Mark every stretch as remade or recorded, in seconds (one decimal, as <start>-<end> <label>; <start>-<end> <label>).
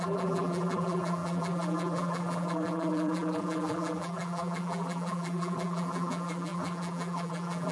0.0-7.7 remade